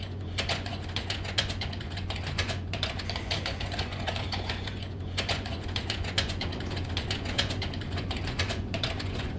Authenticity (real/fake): fake